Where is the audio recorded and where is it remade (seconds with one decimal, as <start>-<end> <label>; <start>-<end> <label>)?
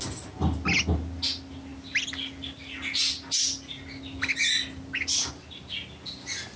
0.0-6.6 recorded